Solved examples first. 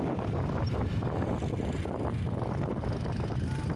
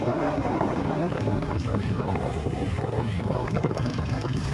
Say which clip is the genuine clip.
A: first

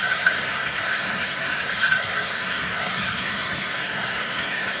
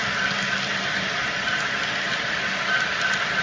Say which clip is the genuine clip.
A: second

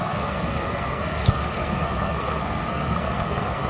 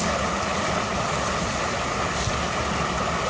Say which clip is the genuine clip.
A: second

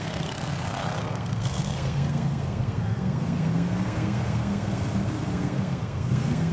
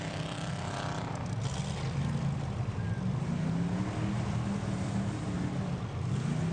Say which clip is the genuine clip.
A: second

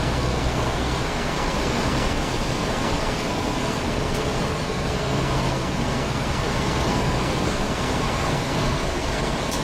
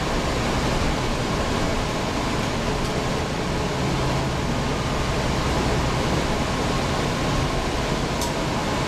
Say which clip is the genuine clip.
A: second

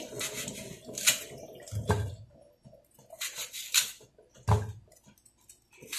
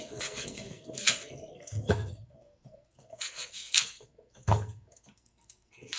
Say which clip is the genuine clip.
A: first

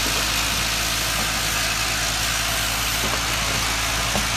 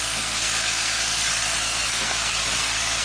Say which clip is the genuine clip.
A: first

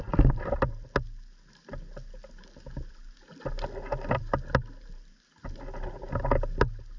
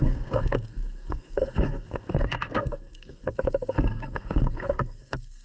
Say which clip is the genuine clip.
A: first